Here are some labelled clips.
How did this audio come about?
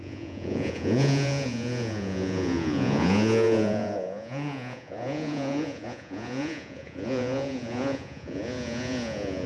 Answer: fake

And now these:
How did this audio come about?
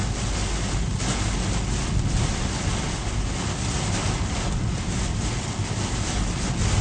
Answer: real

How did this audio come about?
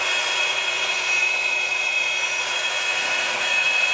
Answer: fake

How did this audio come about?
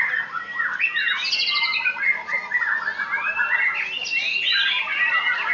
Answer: real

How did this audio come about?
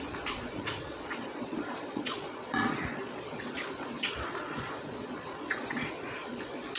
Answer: fake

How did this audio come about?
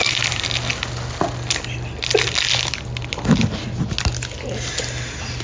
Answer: real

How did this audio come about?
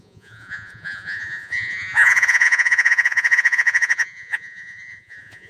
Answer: fake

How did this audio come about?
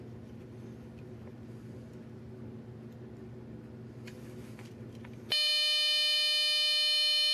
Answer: real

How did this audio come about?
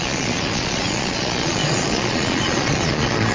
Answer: fake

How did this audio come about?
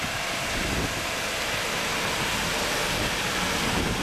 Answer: real